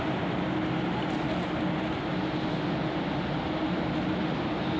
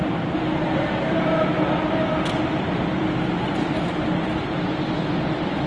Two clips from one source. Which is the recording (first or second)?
first